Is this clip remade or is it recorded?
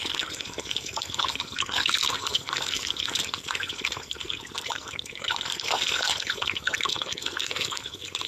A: remade